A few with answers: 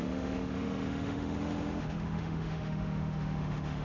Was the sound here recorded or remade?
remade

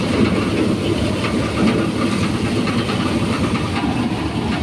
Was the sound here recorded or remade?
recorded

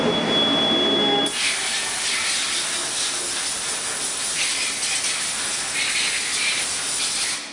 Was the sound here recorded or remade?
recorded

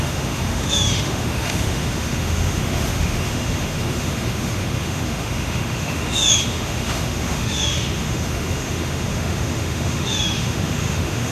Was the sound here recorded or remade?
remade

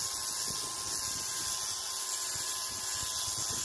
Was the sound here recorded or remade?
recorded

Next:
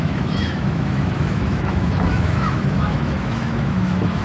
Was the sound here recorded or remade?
remade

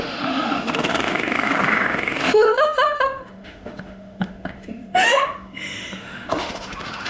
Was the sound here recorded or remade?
remade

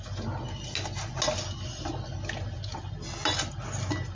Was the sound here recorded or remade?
recorded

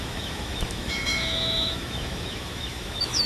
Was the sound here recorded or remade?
remade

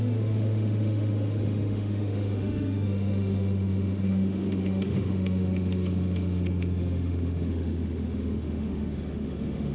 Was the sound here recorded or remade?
remade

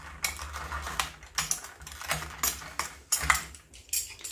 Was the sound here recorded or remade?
recorded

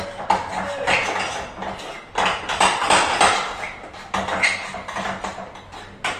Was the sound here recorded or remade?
recorded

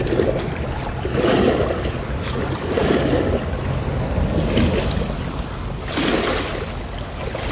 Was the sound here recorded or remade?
recorded